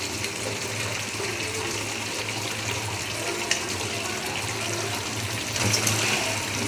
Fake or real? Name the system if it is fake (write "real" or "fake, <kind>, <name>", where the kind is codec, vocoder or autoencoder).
real